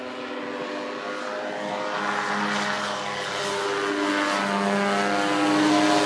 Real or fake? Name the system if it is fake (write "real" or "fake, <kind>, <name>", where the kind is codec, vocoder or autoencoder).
real